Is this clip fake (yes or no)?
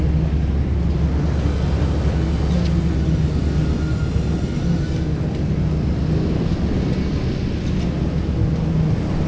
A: no